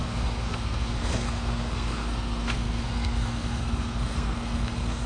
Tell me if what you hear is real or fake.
fake